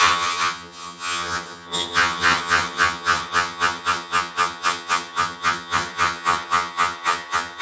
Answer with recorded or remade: remade